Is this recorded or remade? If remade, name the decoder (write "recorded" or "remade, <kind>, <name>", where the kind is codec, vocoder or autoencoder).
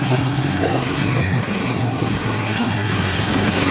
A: remade, codec, SNAC